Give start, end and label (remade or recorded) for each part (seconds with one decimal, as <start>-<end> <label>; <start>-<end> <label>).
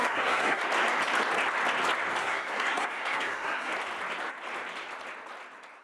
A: 0.0-0.6 remade; 0.6-2.2 recorded; 2.2-3.7 remade; 3.7-5.8 recorded